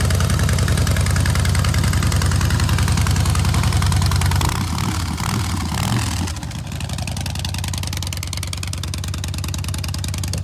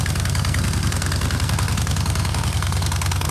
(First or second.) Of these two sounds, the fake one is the second